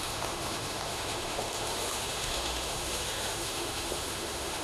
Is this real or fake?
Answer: fake